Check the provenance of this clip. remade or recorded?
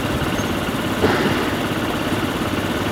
recorded